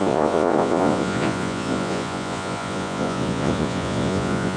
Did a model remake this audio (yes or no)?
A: yes